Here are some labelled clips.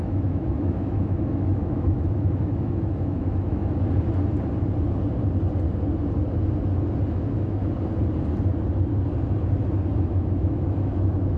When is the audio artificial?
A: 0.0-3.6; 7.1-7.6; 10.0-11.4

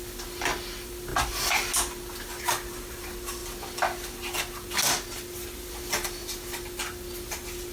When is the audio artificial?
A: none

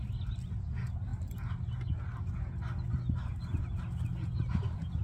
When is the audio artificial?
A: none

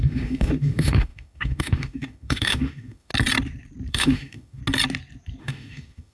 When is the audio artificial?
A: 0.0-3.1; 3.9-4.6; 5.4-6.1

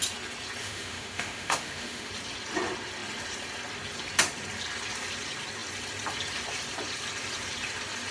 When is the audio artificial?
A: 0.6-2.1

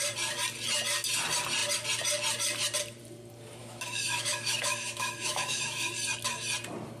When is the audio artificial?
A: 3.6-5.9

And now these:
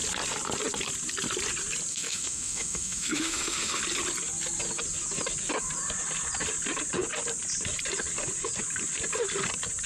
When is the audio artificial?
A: 1.9-3.8

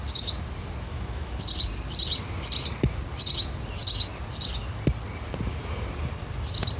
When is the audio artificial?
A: 0.9-1.4